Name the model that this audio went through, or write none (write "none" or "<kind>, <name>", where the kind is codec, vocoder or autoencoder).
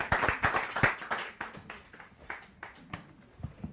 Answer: none